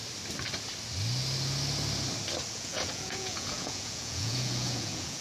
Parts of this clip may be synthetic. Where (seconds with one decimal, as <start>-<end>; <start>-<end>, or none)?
2.5-5.2